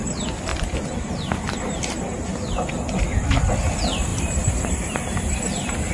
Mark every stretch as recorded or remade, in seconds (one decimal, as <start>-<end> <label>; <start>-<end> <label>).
0.0-4.1 recorded; 4.1-5.2 remade; 5.2-5.9 recorded

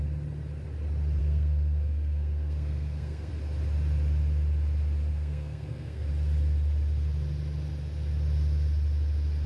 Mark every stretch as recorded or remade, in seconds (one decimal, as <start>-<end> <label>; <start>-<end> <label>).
0.0-1.2 recorded; 1.2-3.3 remade; 3.3-5.1 recorded; 5.1-6.1 remade; 6.1-9.5 recorded

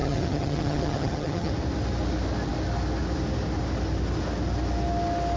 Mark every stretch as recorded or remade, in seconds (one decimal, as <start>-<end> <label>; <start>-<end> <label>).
0.0-1.5 remade; 1.5-5.4 recorded

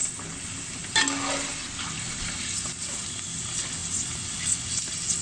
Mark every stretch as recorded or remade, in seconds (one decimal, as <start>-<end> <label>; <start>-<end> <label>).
0.0-5.2 recorded

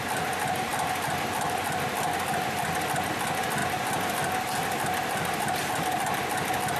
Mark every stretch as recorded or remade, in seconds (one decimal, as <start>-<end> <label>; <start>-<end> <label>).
0.0-6.8 recorded

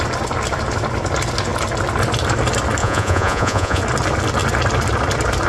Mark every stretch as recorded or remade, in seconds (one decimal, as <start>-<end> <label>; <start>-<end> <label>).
0.0-2.8 recorded; 2.8-3.8 remade; 3.8-5.5 recorded

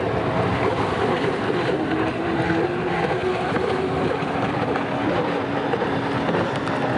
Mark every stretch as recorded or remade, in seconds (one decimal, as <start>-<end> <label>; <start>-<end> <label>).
0.0-3.2 recorded; 3.2-5.9 remade; 5.9-7.0 recorded